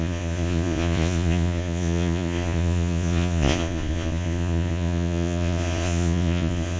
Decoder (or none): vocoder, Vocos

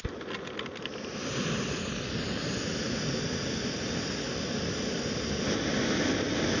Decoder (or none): none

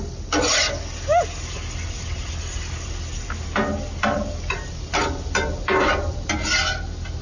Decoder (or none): none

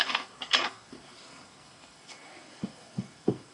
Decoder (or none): codec, SNAC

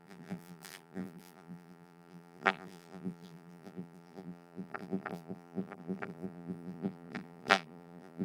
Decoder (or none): vocoder, BigVGAN v2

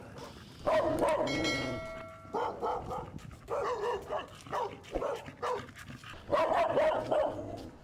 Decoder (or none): none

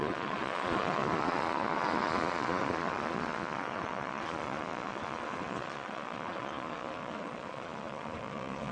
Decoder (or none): vocoder, Vocos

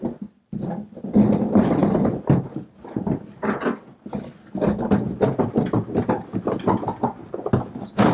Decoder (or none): none